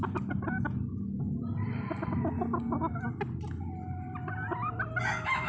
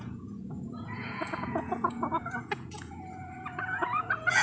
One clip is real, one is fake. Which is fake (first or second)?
second